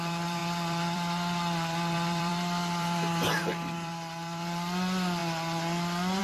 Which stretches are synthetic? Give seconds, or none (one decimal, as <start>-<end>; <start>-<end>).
0.0-5.2